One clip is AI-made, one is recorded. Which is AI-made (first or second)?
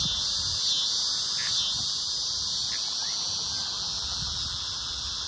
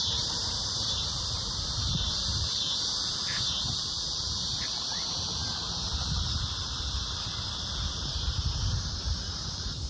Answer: second